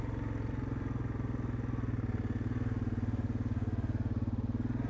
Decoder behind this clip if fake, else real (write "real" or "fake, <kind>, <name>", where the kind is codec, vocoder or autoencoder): real